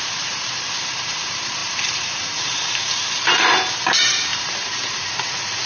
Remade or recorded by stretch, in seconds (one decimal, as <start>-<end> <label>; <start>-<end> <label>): 0.0-5.7 remade